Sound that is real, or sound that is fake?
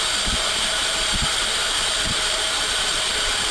fake